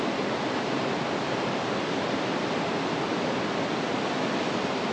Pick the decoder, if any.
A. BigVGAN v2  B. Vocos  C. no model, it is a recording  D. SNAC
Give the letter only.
C